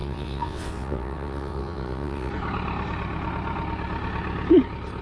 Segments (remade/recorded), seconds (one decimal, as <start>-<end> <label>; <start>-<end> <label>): 0.0-2.3 remade; 2.3-5.0 recorded